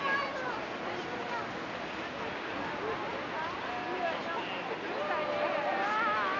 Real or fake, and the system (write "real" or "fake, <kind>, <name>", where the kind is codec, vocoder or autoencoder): real